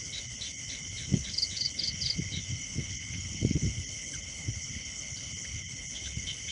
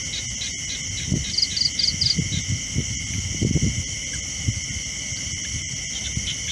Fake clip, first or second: first